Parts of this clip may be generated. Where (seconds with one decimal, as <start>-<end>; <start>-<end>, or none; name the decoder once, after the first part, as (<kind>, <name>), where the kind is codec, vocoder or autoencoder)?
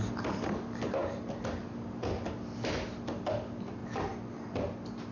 none